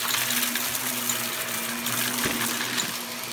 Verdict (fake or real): real